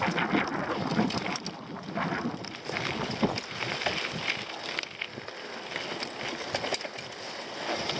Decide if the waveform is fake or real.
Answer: real